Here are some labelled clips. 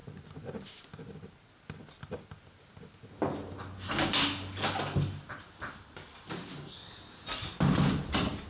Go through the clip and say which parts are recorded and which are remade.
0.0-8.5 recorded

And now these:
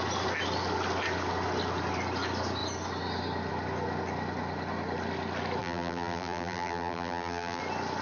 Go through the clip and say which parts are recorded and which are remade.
0.0-5.6 recorded; 5.6-7.6 remade; 7.6-8.0 recorded

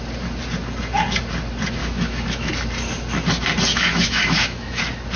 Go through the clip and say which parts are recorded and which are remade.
0.0-1.8 recorded; 1.8-2.5 remade; 2.5-3.7 recorded; 3.7-4.8 remade; 4.8-5.2 recorded

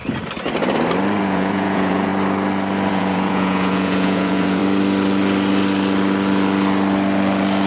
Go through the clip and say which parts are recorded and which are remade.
0.0-1.2 recorded; 1.2-2.1 remade; 2.1-2.9 recorded; 2.9-4.6 remade; 4.6-7.7 recorded

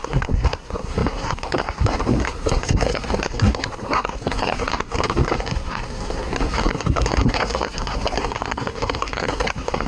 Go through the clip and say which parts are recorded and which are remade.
0.0-9.9 remade